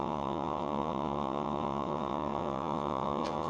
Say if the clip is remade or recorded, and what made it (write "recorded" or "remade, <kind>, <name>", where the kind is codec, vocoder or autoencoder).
remade, vocoder, WaveNeXt